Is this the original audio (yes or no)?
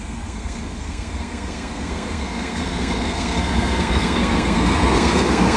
no